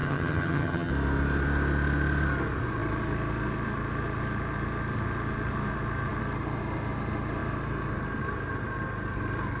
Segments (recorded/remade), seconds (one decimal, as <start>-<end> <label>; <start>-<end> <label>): 0.0-0.9 remade; 0.9-9.6 recorded